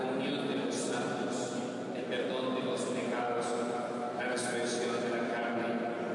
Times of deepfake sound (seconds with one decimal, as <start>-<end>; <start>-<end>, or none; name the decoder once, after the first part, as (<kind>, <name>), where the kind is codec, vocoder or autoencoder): none